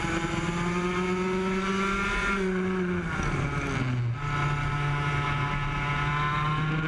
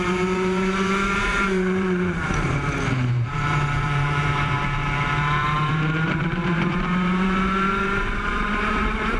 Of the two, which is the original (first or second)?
first